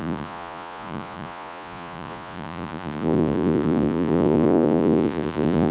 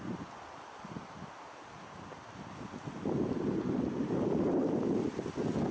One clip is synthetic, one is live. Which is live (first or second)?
second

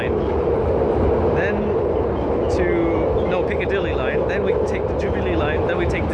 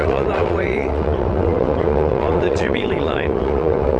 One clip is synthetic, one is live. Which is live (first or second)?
first